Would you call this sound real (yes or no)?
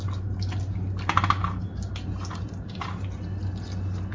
yes